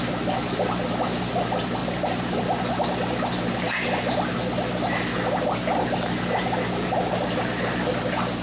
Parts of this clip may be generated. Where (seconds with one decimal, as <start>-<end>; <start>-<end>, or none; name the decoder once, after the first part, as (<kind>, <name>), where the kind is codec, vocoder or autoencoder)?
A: none